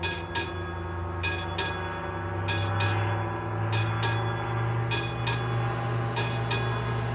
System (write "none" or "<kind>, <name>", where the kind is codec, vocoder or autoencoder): none